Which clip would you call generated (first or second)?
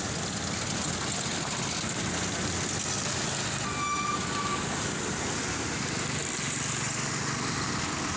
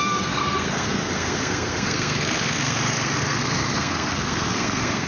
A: second